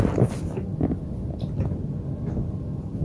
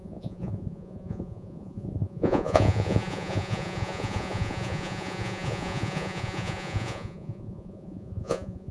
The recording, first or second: first